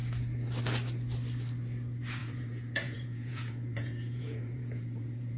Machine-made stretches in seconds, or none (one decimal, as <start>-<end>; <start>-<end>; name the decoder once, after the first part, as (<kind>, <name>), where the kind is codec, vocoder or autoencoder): 2.2-5.4 (vocoder, Vocos)